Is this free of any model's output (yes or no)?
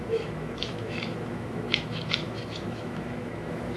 no